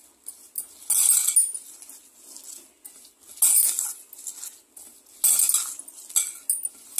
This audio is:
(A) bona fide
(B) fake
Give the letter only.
A